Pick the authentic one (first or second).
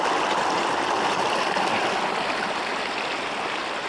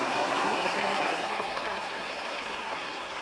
first